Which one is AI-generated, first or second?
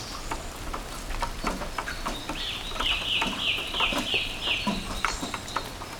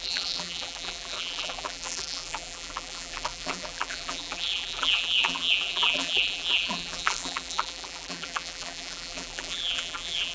second